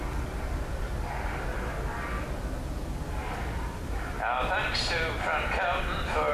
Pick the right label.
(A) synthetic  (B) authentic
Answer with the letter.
B